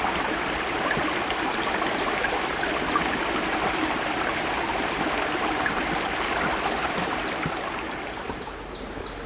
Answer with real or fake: real